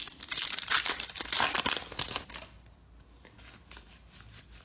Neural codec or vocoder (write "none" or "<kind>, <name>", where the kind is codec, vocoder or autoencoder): none